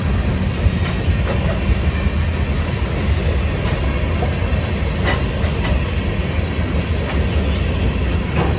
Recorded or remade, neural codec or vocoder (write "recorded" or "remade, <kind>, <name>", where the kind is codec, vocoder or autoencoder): recorded